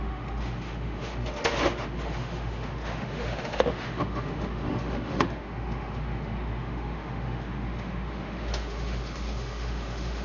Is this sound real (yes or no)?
no